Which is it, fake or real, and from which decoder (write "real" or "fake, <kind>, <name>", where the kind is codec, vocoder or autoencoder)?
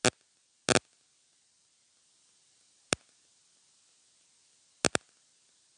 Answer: real